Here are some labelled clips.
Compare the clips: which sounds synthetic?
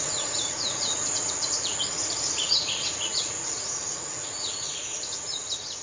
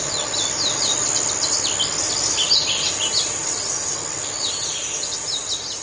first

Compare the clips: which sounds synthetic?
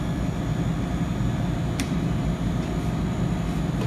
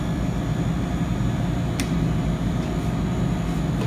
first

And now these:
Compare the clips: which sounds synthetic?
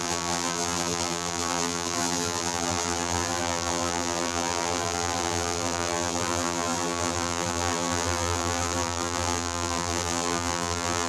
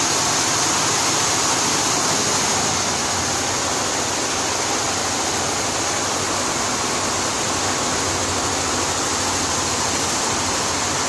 first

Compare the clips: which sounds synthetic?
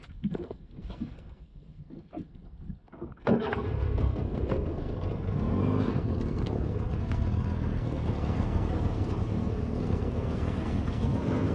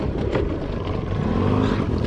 first